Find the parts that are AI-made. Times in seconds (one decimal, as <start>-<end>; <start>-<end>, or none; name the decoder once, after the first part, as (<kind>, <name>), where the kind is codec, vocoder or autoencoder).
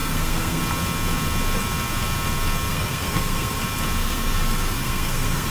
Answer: 0.0-0.6 (codec, SNAC); 2.7-3.6; 4.0-5.5